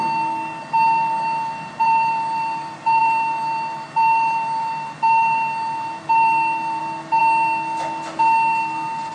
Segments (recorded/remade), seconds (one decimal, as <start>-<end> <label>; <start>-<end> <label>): 0.0-7.2 remade; 7.2-9.1 recorded